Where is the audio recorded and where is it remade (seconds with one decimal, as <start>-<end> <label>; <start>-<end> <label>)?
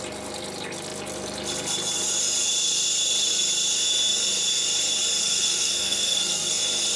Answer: 0.0-5.2 recorded; 5.2-6.6 remade; 6.6-7.0 recorded